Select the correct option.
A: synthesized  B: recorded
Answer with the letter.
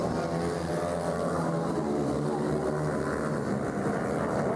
B